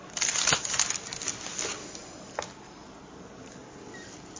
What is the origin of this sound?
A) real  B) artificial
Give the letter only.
A